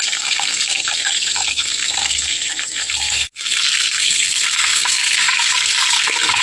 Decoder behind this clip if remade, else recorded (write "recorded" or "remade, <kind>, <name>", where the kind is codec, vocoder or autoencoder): remade, codec, SNAC